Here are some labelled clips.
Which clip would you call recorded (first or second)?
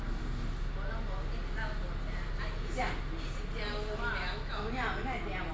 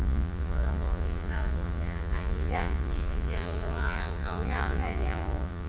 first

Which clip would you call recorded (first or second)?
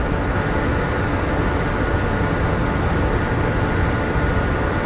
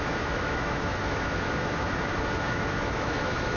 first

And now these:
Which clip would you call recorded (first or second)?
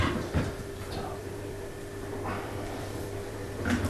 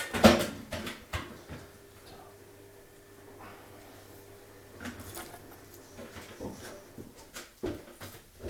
second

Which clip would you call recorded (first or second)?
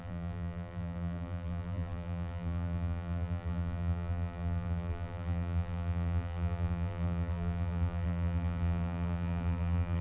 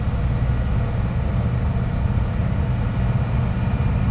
second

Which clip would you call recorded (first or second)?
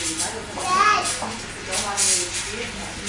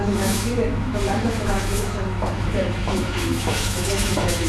first